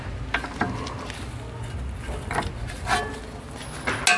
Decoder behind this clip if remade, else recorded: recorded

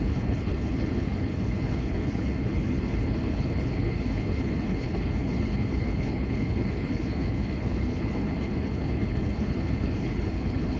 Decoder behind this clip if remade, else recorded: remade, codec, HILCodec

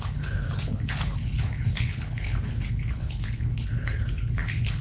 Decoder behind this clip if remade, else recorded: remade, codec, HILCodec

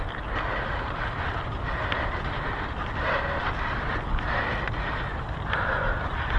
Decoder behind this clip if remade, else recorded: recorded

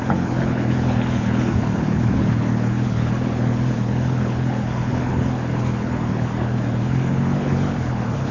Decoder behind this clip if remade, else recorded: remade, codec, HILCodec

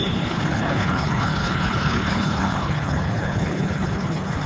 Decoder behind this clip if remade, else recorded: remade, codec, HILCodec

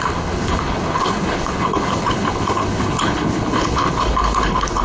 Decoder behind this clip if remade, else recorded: remade, codec, HILCodec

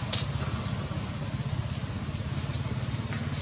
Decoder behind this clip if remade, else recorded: recorded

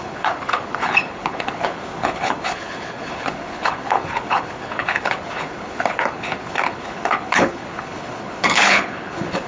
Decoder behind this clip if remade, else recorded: remade, codec, HILCodec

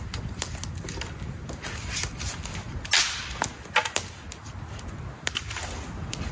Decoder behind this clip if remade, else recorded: recorded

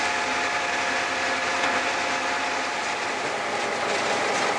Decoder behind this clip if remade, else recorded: recorded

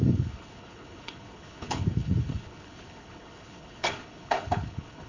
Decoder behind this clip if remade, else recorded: remade, codec, HILCodec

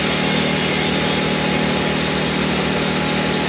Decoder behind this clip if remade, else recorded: recorded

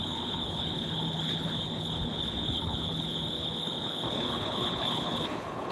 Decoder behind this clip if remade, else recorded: remade, codec, HILCodec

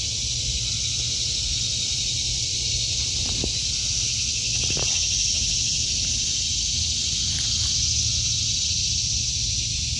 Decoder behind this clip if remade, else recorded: recorded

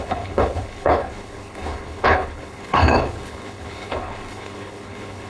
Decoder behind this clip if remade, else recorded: remade, codec, HILCodec